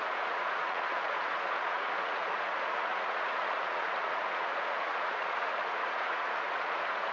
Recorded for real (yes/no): no